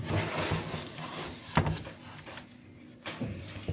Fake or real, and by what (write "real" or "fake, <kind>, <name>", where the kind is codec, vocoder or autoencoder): real